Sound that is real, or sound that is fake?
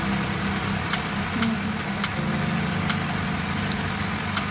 real